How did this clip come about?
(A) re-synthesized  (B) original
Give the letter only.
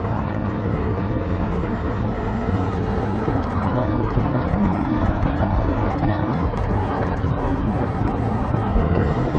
A